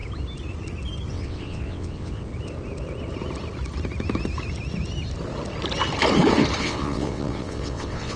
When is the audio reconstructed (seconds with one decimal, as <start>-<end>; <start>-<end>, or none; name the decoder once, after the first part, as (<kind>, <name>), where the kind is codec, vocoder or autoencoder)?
1.1-2.3 (vocoder, WaveNeXt); 6.6-8.2